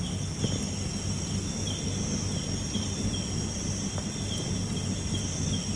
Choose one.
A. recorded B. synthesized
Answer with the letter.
A